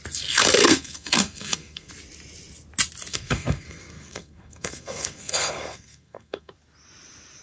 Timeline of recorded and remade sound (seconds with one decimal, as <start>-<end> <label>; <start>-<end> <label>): 0.0-0.6 recorded; 0.6-1.9 remade; 1.9-3.1 recorded; 3.1-6.5 remade; 6.5-7.4 recorded